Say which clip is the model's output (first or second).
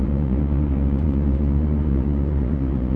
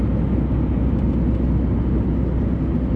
first